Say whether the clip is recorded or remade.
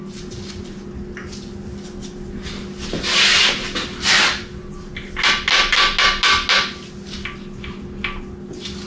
recorded